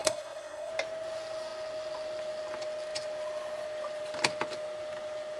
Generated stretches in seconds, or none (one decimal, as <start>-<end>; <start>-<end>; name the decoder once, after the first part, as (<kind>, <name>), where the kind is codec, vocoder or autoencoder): 0.0-0.7 (codec, SNAC)